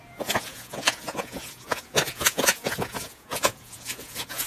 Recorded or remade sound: remade